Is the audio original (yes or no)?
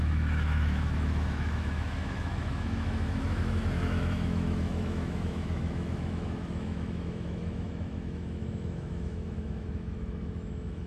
no